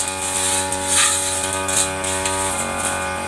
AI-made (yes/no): no